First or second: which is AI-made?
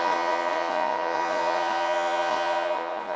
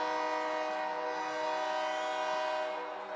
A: first